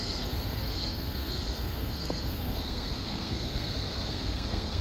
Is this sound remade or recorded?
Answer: remade